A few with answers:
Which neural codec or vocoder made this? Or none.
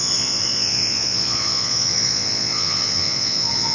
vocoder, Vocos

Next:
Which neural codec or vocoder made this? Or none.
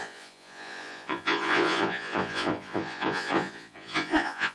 vocoder, Vocos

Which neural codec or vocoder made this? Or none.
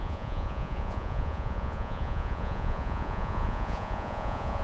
vocoder, Vocos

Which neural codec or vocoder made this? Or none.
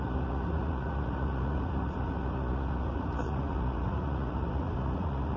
vocoder, Vocos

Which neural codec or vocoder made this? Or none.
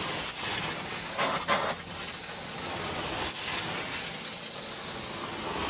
none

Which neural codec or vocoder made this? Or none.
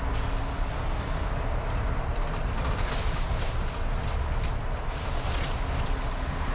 none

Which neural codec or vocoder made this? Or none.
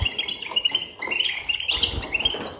none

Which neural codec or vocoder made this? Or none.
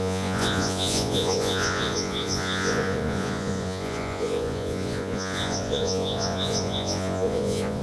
vocoder, Vocos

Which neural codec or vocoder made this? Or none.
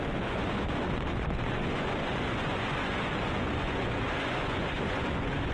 vocoder, Vocos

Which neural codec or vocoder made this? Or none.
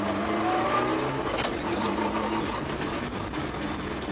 none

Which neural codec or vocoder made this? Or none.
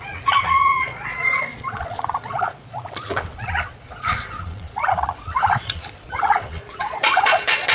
vocoder, Vocos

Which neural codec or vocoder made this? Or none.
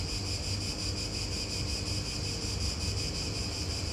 none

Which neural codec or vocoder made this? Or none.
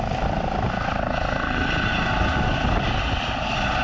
none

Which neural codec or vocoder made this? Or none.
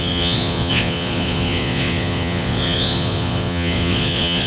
vocoder, Vocos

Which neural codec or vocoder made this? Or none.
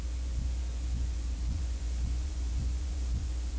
vocoder, Vocos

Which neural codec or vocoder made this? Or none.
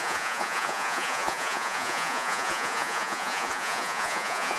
vocoder, Vocos